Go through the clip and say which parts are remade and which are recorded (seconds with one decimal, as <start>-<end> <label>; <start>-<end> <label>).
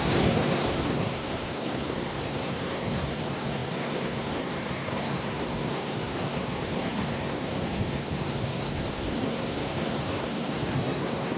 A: 0.0-11.4 remade